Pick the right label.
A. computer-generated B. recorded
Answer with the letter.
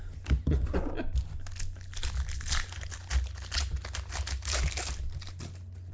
B